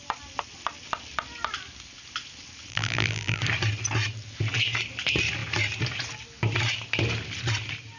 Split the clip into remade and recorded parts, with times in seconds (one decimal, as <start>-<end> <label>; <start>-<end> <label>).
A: 0.0-2.7 recorded; 2.7-3.4 remade; 3.4-8.0 recorded